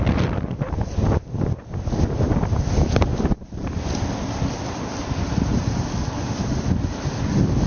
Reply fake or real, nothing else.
real